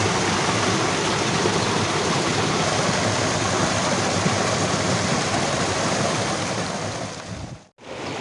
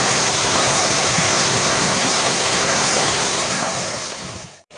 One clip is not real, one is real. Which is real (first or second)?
first